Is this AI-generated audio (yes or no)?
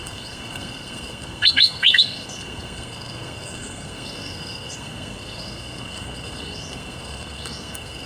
yes